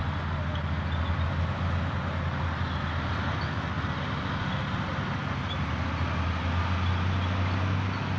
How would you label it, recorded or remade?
recorded